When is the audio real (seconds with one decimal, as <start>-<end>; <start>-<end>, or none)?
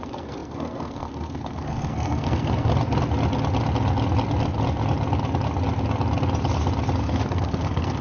2.7-7.0